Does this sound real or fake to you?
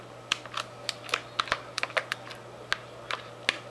real